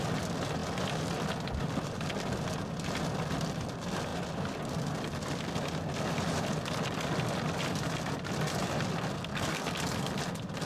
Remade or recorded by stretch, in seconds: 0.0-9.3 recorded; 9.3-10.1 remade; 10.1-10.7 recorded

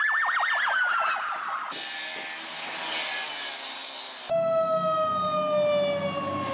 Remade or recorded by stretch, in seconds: 0.0-6.5 recorded

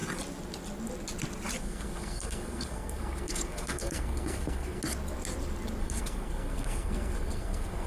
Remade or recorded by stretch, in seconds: 0.0-1.6 recorded; 1.6-4.8 remade; 4.8-5.8 recorded; 5.8-7.9 remade

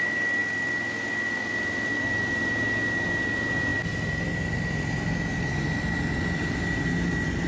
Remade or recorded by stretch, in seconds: 0.0-7.5 recorded